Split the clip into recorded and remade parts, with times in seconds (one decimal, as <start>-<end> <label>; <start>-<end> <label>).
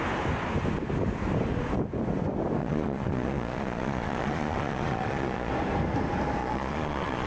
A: 0.0-2.6 recorded; 2.6-5.5 remade; 5.5-6.4 recorded; 6.4-7.3 remade